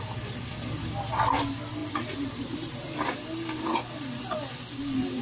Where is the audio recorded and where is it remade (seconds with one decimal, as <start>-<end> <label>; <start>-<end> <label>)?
0.0-5.2 recorded